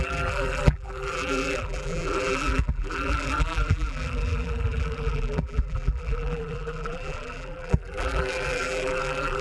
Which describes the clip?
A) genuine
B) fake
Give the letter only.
B